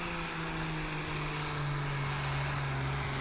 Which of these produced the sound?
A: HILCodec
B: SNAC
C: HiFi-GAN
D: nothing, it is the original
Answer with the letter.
D